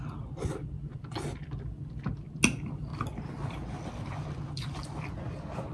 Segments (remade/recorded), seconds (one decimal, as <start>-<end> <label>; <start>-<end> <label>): 0.0-2.9 recorded; 2.9-5.1 remade; 5.1-5.7 recorded